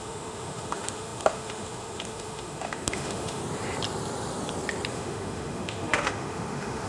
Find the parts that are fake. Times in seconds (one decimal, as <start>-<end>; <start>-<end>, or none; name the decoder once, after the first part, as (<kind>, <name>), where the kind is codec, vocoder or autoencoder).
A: 0.0-3.4 (autoencoder, DAC-VAE); 4.9-6.9